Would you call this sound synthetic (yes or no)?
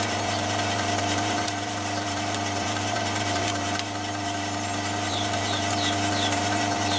yes